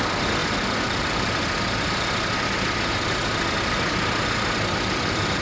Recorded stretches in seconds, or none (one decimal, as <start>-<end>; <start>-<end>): 0.0-5.4